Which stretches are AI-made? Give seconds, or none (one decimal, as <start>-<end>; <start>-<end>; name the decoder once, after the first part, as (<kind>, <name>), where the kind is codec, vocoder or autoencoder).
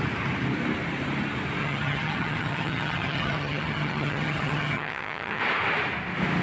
1.6-5.4 (vocoder, HiFi-GAN)